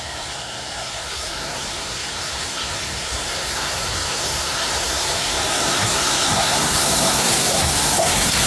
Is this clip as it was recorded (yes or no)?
no